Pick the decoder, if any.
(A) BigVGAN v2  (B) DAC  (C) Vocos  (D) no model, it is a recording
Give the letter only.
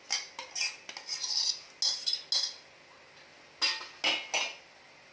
D